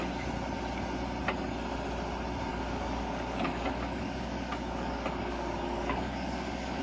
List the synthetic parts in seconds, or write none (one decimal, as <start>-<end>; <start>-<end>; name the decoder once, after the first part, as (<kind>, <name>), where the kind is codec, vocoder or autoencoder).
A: 2.5-6.8 (codec, DAC)